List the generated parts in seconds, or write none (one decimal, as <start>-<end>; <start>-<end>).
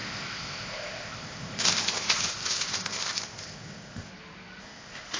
0.0-4.1; 4.6-5.2